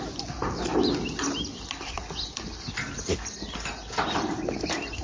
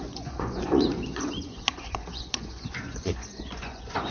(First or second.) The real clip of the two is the first